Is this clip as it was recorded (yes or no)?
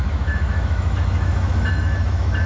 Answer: no